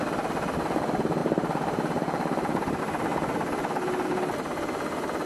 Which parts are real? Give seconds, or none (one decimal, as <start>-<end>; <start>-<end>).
0.0-1.2; 2.8-5.3